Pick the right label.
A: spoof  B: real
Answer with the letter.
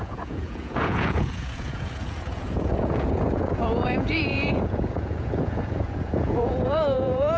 A